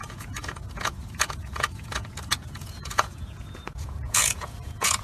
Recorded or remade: remade